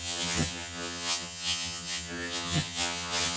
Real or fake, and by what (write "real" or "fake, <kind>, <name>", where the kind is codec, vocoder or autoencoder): fake, vocoder, HiFi-GAN